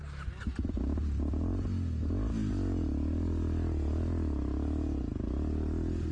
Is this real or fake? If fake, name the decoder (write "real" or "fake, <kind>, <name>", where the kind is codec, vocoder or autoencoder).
real